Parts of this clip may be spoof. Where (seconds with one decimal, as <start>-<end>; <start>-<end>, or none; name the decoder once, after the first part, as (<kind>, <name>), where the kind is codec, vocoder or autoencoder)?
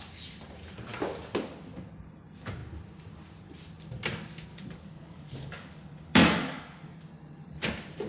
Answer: 4.5-6.9 (codec, DAC)